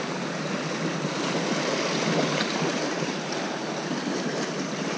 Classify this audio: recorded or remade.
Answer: recorded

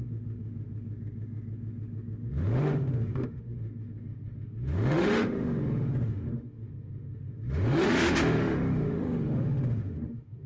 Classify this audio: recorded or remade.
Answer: remade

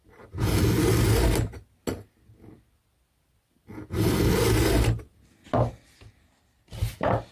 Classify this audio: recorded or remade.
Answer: recorded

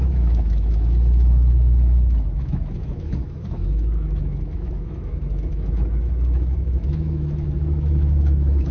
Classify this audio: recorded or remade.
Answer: remade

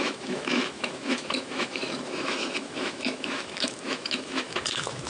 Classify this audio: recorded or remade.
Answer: remade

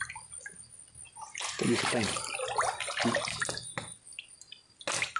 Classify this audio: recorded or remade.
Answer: recorded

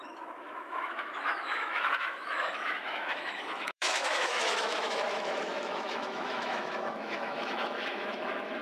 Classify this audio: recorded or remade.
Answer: remade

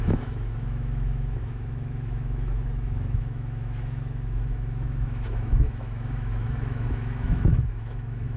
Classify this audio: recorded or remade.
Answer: remade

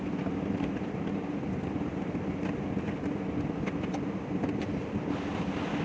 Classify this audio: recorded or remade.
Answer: recorded